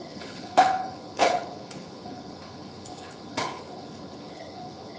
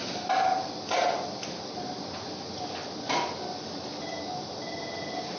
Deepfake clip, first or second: first